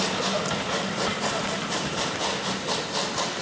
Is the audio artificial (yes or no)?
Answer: no